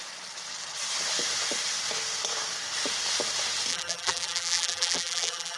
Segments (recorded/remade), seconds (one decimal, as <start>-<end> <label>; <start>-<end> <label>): 0.0-3.7 recorded; 3.7-5.6 remade